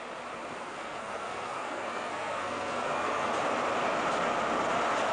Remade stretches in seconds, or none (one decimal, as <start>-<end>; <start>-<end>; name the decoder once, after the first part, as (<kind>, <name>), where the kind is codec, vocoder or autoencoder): 0.6-3.3 (codec, SNAC)